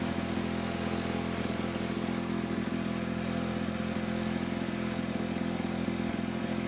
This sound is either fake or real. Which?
real